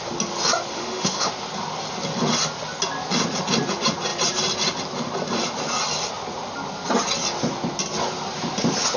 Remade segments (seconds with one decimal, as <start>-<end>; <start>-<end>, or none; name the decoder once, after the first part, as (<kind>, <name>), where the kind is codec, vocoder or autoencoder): 0.7-1.3 (autoencoder, DAC-VAE)